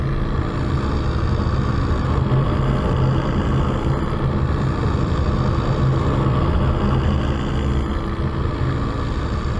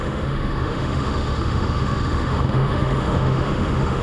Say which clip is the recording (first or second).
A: first